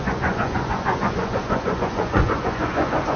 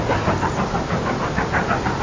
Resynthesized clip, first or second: first